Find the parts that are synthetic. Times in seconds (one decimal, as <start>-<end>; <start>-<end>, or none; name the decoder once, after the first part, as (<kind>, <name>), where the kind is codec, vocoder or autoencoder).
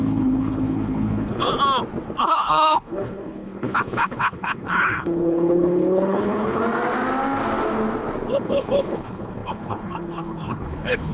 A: 0.0-1.5 (codec, HILCodec); 2.2-6.6; 8.3-11.1